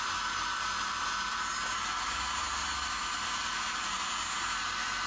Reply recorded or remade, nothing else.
recorded